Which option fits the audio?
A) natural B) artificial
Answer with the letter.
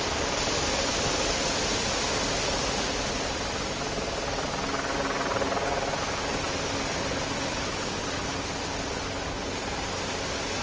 A